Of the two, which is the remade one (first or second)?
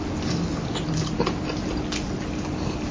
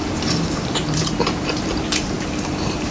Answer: second